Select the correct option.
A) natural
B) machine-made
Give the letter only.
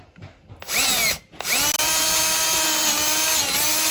A